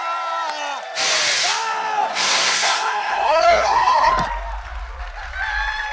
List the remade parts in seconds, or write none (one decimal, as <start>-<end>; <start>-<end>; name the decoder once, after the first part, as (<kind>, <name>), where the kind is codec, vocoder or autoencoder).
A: 2.1-4.1 (codec, SNAC)